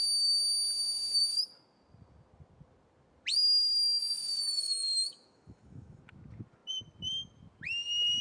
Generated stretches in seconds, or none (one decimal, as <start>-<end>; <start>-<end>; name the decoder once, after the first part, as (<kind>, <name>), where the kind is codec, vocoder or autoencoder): 4.4-6.0 (autoencoder, DAC-VAE)